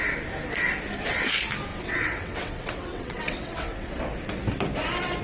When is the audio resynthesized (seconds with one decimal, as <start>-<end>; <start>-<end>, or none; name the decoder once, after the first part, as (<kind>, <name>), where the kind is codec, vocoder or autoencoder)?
1.7-4.0 (vocoder, WaveNeXt)